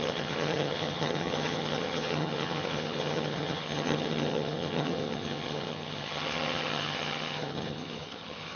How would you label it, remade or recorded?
remade